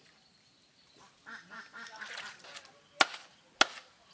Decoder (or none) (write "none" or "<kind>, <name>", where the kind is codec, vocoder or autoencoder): none